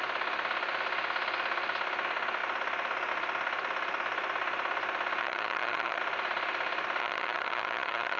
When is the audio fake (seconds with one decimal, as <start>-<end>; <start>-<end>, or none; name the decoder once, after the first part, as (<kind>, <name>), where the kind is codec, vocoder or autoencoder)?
5.2-6.0 (vocoder, HiFi-GAN); 7.0-8.2